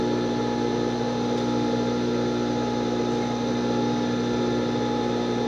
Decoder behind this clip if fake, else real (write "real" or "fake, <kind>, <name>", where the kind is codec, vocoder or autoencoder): real